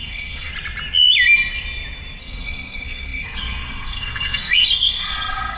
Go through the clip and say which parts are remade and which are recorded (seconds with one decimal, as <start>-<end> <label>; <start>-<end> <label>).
0.0-0.5 remade; 0.5-2.2 recorded; 2.2-5.6 remade